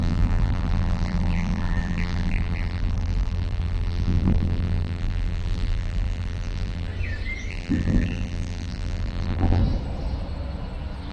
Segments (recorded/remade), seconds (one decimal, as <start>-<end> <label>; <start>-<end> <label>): 0.0-6.9 remade; 6.9-7.5 recorded; 7.5-9.6 remade; 9.6-11.1 recorded